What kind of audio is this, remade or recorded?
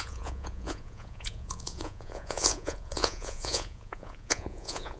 remade